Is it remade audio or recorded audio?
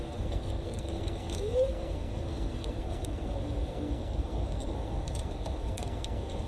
remade